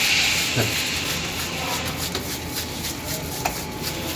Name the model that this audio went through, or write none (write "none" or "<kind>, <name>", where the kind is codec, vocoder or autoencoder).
none